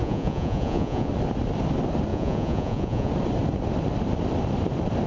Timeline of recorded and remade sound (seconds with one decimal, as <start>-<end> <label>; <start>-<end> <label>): 0.0-1.1 remade; 1.1-2.1 recorded; 2.1-3.1 remade; 3.1-5.1 recorded